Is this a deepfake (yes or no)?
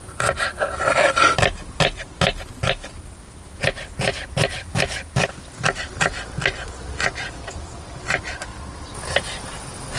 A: no